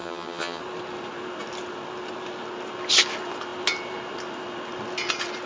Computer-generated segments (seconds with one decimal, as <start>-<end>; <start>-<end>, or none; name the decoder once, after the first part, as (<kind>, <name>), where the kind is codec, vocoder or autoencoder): 0.0-0.6 (vocoder, HiFi-GAN)